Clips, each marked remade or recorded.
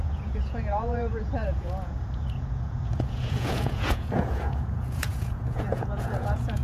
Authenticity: remade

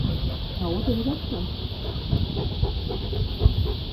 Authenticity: recorded